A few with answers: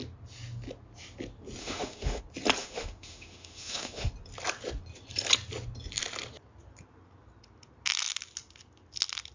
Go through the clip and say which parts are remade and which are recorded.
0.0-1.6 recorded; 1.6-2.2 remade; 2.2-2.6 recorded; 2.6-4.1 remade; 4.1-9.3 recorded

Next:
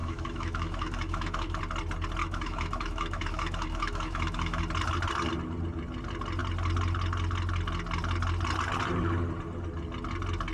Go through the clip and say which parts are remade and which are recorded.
0.0-1.6 remade; 1.6-2.2 recorded; 2.2-4.6 remade; 4.6-10.5 recorded

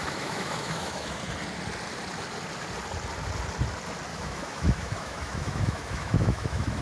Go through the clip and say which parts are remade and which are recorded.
0.0-1.2 remade; 1.2-4.1 recorded; 4.1-6.8 remade

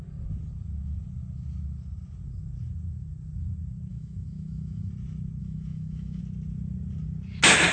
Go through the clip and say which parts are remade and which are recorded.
0.0-3.9 recorded; 3.9-4.9 remade; 4.9-5.4 recorded; 5.4-6.2 remade; 6.2-7.7 recorded

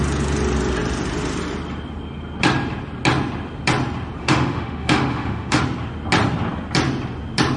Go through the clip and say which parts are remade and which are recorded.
0.0-4.2 recorded; 4.2-5.6 remade; 5.6-7.6 recorded

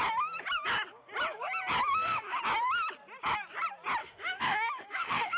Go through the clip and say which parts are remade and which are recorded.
0.0-1.9 recorded; 1.9-2.4 remade; 2.4-4.0 recorded; 4.0-5.4 remade